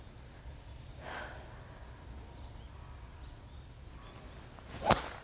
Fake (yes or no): no